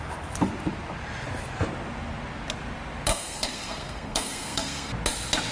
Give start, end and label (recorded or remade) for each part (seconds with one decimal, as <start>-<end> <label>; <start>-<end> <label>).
0.0-3.1 recorded; 3.1-4.9 remade; 4.9-5.5 recorded